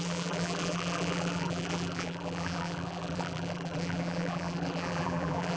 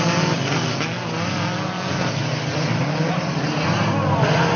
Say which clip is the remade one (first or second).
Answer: first